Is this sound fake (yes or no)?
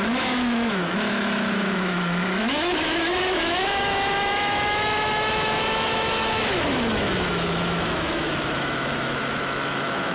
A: yes